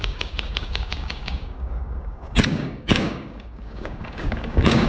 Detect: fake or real fake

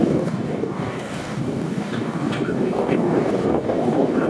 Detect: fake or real fake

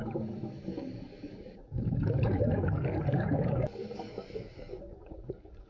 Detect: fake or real fake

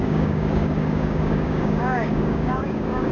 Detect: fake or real fake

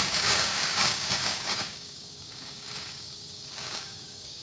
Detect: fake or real fake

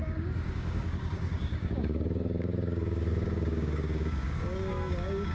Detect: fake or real fake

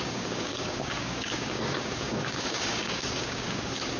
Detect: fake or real fake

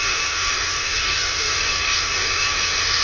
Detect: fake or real fake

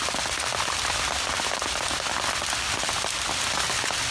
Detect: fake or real real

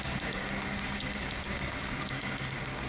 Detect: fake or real fake